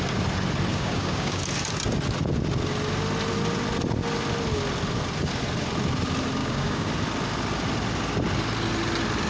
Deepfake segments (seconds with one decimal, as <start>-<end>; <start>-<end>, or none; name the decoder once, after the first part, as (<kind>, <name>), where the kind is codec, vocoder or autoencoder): 0.7-1.4 (codec, DAC); 6.4-6.9